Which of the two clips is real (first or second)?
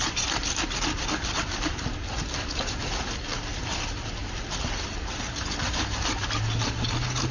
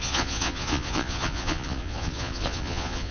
first